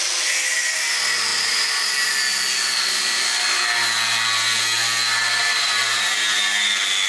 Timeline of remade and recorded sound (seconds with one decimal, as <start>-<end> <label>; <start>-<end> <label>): 0.0-7.1 recorded